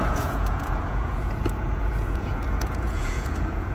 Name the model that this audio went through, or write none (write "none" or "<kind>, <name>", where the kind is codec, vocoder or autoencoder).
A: vocoder, Vocos